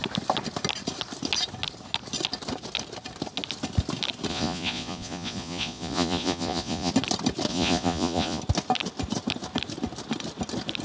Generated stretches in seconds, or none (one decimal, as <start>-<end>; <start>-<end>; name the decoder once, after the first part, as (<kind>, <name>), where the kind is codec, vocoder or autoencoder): 4.3-6.9 (vocoder, Vocos); 7.5-8.4